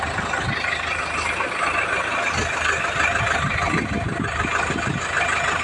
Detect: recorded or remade recorded